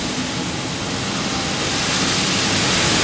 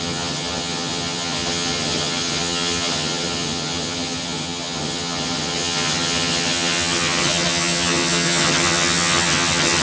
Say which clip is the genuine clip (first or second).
first